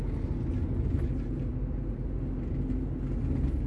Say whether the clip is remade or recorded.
recorded